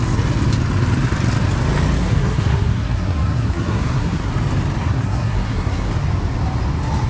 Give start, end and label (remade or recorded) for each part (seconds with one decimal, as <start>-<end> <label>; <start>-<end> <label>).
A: 0.0-2.0 recorded; 2.0-4.3 remade; 4.3-4.8 recorded; 4.8-5.9 remade; 5.9-7.1 recorded